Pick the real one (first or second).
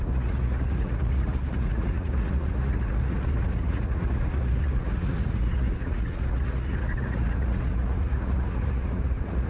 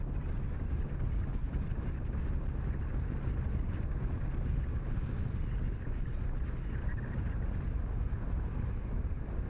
second